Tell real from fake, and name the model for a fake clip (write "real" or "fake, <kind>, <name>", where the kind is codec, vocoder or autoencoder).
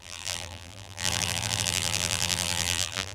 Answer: fake, vocoder, BigVGAN v2